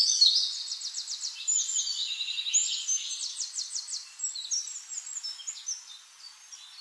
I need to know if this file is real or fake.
real